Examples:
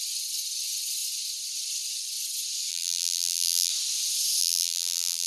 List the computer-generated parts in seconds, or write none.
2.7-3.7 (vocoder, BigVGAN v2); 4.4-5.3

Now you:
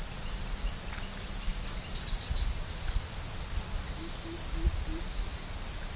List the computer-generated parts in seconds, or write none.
none